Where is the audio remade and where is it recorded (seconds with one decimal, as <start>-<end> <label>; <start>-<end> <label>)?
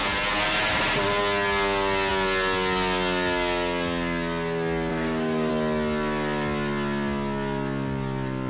0.0-4.9 recorded; 4.9-5.5 remade; 5.5-8.5 recorded